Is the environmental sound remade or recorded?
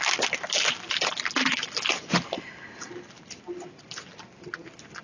recorded